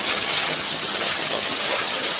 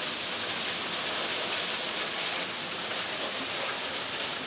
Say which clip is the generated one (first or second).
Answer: first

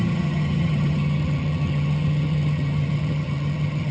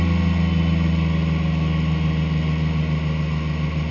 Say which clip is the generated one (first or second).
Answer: first